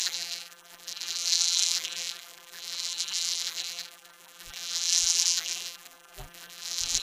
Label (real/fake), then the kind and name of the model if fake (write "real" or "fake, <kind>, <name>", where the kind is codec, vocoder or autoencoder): fake, vocoder, BigVGAN v2